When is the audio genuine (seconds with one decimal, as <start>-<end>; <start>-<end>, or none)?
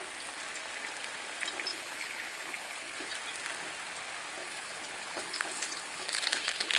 0.0-1.7; 3.1-4.4